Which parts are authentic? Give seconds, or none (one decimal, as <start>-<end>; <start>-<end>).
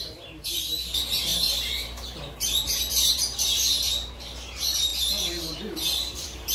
4.9-5.5